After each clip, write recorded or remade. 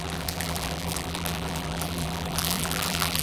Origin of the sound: remade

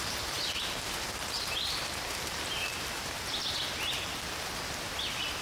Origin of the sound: recorded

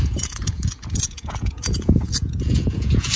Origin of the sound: remade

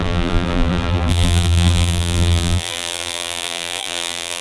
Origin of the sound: remade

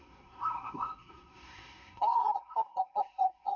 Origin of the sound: remade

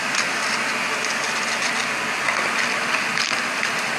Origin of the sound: recorded